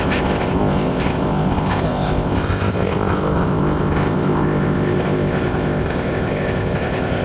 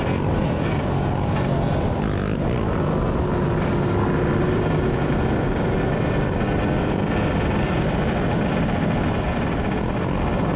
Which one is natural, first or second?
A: second